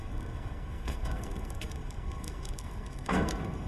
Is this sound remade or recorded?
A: remade